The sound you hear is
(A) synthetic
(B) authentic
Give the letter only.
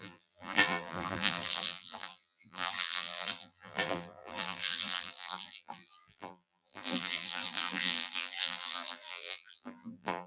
A